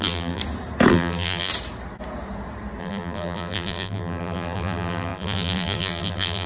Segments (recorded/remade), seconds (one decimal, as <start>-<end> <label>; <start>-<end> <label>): 0.0-0.4 remade; 0.4-0.9 recorded; 0.9-1.5 remade; 1.5-2.8 recorded; 2.8-6.5 remade